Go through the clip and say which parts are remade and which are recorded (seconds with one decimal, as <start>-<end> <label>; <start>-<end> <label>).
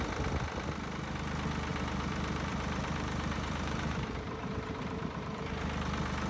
0.0-1.7 recorded; 1.7-5.5 remade; 5.5-6.3 recorded